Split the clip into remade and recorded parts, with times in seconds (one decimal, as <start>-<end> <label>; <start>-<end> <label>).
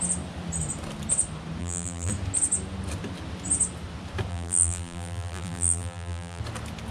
0.0-1.6 recorded; 1.6-2.1 remade; 2.1-4.3 recorded; 4.3-6.4 remade; 6.4-6.9 recorded